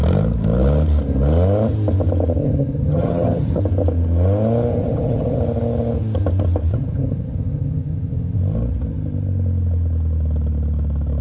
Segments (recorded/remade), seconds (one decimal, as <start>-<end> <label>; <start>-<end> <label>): 0.0-2.4 recorded; 2.4-3.6 remade; 3.6-4.7 recorded; 4.7-5.4 remade; 5.4-6.7 recorded; 6.7-8.4 remade; 8.4-11.2 recorded